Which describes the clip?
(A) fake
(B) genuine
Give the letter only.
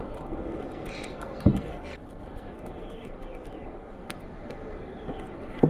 A